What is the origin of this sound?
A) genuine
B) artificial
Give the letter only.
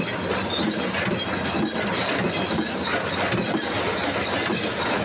A